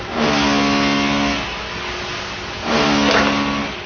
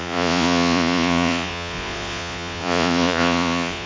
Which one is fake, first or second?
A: second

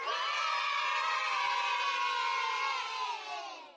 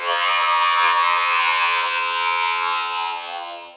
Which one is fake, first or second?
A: second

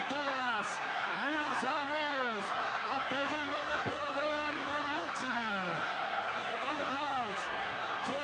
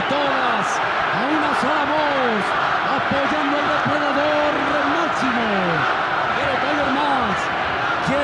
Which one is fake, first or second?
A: first